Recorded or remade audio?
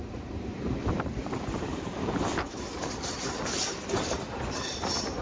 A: remade